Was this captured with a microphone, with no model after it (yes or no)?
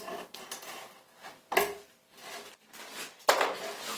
yes